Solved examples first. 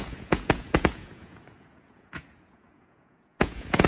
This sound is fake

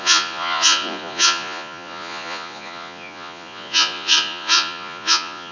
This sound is fake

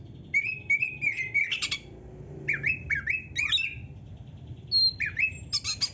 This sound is real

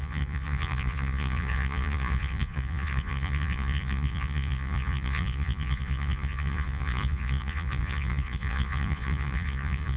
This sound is fake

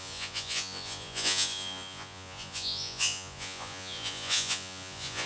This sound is fake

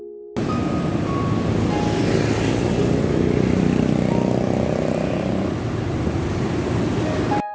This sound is real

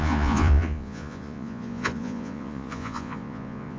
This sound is fake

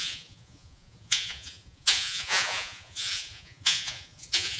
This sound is fake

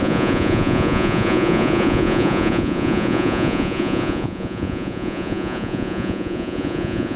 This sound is fake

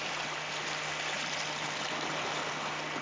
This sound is real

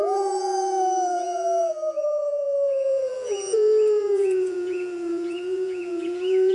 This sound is fake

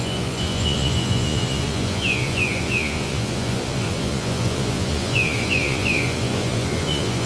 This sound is fake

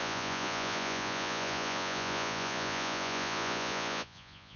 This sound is fake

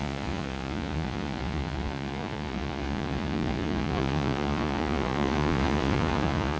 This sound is fake